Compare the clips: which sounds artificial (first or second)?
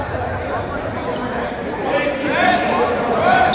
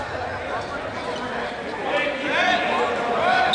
first